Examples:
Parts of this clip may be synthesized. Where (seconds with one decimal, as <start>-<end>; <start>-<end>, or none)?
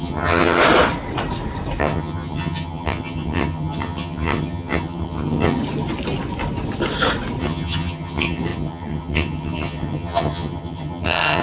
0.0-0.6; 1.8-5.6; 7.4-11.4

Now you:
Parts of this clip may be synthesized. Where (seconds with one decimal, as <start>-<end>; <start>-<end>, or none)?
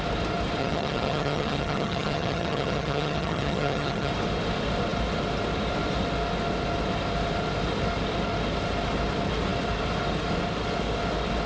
0.6-4.1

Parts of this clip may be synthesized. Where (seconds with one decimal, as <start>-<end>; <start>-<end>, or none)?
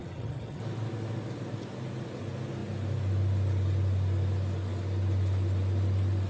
0.0-0.6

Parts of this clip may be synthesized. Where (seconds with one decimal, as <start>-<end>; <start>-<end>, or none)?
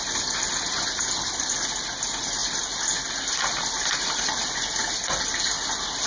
none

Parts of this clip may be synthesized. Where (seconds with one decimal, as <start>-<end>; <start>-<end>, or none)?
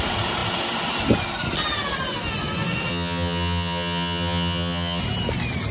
2.9-5.0